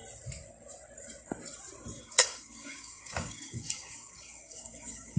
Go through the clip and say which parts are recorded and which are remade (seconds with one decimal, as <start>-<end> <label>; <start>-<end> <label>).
0.0-2.0 recorded; 2.0-5.2 remade